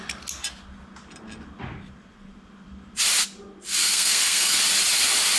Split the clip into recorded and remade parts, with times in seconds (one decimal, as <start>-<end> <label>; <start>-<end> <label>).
0.0-3.8 recorded; 3.8-4.6 remade; 4.6-5.4 recorded